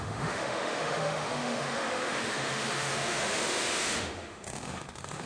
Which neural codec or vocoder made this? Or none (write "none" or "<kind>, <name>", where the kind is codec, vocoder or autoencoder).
autoencoder, DAC-VAE